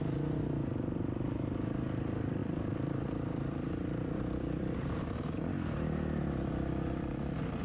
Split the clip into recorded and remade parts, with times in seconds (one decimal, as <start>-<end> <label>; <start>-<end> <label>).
0.0-2.4 recorded; 2.4-5.0 remade; 5.0-7.6 recorded